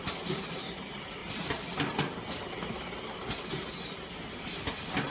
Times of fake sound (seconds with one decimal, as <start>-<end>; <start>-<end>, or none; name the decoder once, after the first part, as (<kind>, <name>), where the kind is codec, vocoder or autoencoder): 0.0-1.2 (vocoder, BigVGAN v2); 4.3-5.1